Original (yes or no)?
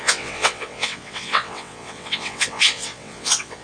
no